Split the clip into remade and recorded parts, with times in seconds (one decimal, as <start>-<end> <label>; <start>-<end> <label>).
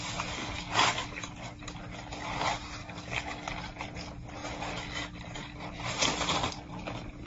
0.0-0.4 recorded; 0.4-1.6 remade; 1.6-2.8 recorded; 2.8-3.5 remade; 3.5-7.3 recorded